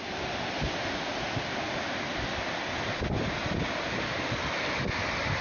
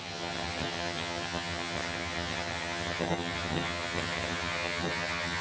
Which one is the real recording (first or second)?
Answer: first